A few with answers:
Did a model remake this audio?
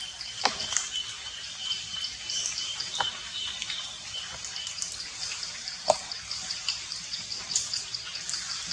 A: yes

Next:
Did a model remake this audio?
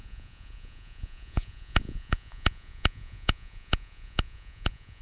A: yes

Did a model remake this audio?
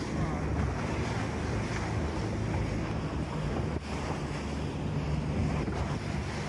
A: no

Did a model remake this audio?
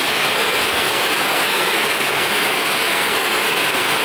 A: yes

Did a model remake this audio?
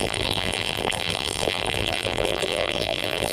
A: yes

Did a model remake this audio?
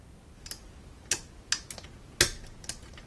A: no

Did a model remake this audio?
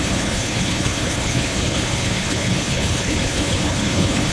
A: yes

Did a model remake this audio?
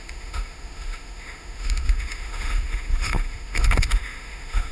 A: yes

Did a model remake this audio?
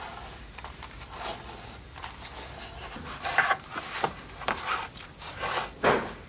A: no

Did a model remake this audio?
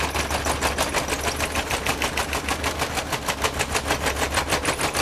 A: no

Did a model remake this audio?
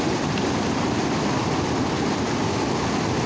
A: no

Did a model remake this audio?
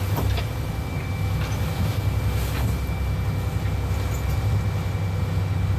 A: no